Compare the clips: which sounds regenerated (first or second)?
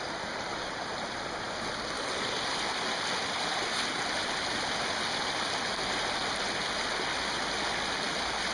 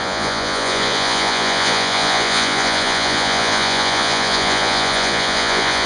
second